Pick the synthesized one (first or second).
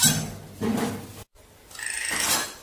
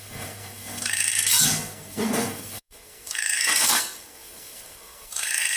second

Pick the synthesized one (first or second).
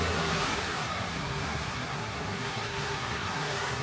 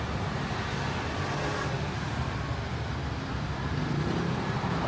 first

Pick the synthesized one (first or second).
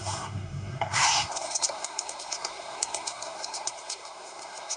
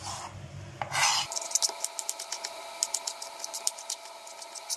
first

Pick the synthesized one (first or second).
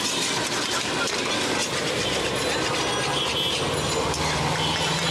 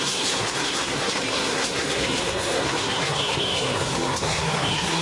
second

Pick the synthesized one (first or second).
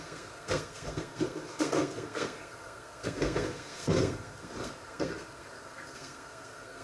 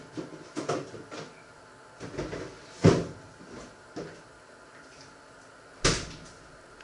first